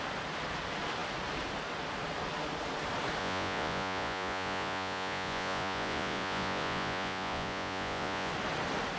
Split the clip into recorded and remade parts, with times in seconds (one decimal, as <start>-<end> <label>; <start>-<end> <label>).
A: 0.0-3.2 recorded; 3.2-8.3 remade; 8.3-9.0 recorded